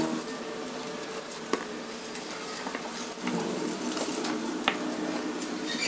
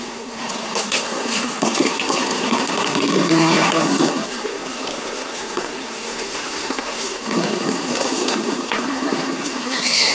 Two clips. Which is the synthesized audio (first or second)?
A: second